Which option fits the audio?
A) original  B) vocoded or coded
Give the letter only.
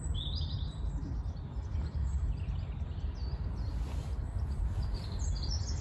A